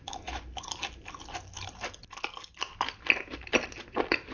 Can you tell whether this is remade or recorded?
recorded